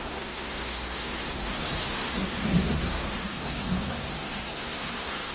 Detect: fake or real fake